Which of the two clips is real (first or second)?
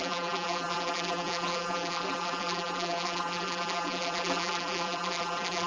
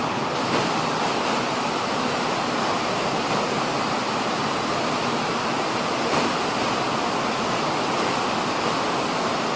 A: second